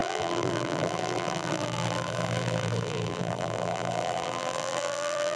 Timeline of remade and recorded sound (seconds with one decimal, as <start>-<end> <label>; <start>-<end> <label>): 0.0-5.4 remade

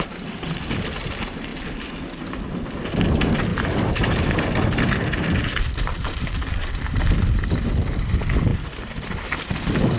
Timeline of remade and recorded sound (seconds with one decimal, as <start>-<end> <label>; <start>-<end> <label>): 0.0-3.5 recorded; 3.5-5.6 remade; 5.6-8.5 recorded; 8.5-9.5 remade; 9.5-10.0 recorded

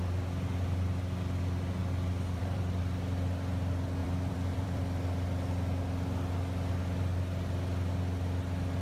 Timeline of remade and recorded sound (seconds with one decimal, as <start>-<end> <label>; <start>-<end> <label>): 0.0-1.8 recorded; 1.8-2.8 remade; 2.8-4.0 recorded; 4.0-4.8 remade; 4.8-8.8 recorded

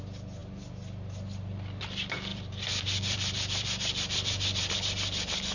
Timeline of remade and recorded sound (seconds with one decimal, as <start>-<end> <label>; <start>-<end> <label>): 0.0-2.3 recorded; 2.3-4.7 remade; 4.7-5.5 recorded

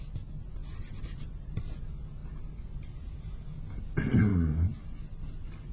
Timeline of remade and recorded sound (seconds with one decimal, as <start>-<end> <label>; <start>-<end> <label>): 0.0-0.6 recorded; 0.6-1.6 remade; 1.6-2.2 recorded; 2.2-3.2 remade; 3.2-4.3 recorded; 4.3-5.0 remade; 5.0-5.7 recorded

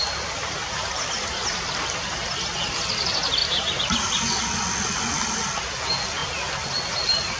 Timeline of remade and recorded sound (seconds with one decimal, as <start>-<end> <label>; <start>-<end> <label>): 0.0-6.2 recorded; 6.2-7.4 remade